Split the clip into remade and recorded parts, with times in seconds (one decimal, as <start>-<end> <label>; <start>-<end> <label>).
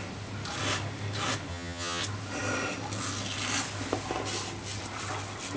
0.0-1.5 recorded; 1.5-2.0 remade; 2.0-5.6 recorded